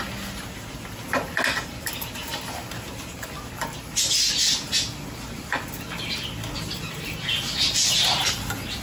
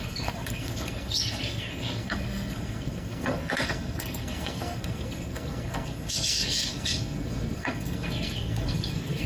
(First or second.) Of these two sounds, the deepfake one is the second